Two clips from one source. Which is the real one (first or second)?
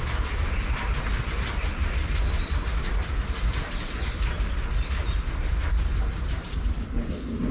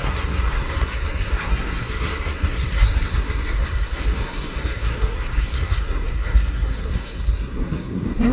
first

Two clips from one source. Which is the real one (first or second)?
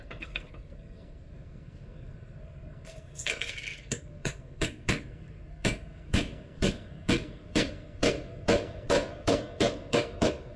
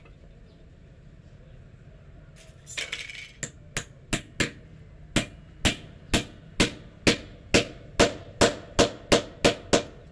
second